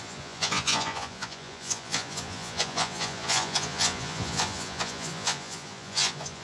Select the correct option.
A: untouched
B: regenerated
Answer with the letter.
B